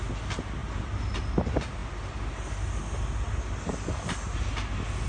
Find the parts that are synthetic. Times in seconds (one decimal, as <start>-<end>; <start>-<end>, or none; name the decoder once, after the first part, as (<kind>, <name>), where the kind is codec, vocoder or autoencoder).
none